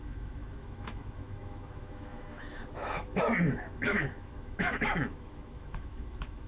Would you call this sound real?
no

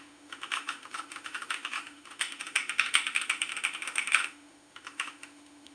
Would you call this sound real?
no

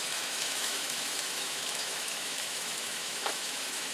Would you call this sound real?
no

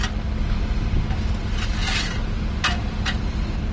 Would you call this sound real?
yes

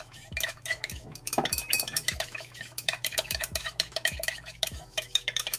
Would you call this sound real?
no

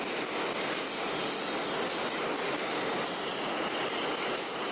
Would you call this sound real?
yes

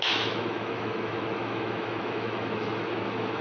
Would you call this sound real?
no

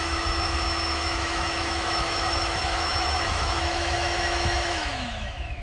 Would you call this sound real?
no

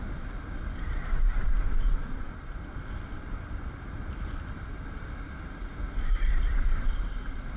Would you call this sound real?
yes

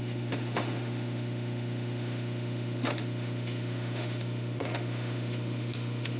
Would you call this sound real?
no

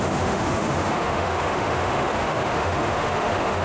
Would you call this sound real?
no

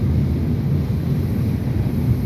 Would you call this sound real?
yes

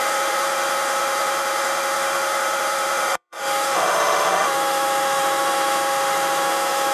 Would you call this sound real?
no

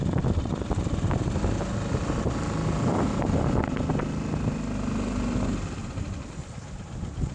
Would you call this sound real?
yes